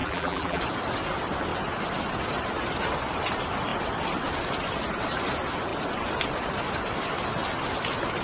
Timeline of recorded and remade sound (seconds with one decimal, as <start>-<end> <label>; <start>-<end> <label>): 0.0-0.6 remade; 0.6-8.2 recorded